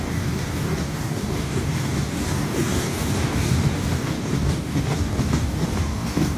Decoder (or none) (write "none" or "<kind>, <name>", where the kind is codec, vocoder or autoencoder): codec, DAC